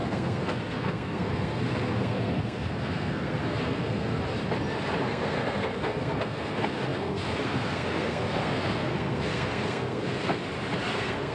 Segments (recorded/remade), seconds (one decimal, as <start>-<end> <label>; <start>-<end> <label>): 0.0-4.1 remade; 4.1-5.0 recorded; 5.0-10.4 remade; 10.4-10.9 recorded; 10.9-11.3 remade